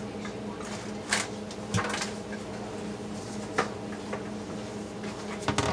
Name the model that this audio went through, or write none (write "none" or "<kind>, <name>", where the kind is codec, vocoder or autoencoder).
none